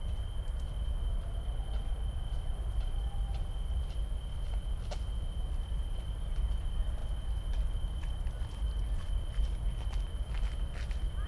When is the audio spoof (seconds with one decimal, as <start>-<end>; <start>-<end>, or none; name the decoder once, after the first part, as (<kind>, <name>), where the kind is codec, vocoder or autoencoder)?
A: none